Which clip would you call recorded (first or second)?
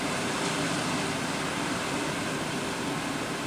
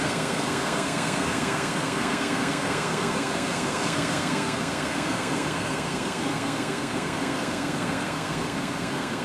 first